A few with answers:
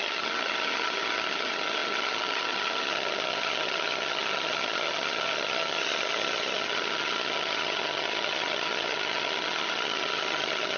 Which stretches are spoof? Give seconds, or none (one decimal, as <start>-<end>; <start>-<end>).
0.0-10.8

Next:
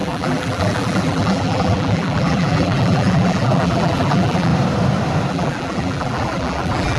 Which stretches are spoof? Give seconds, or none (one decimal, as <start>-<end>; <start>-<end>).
0.0-4.5; 5.3-7.0

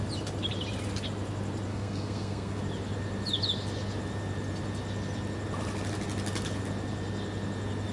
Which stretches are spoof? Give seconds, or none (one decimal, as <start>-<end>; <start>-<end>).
1.7-2.6

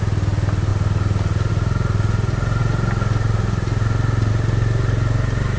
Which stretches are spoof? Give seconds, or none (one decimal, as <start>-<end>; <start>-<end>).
none

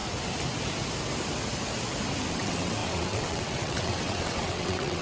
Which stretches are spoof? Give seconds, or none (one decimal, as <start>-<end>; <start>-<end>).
2.3-5.0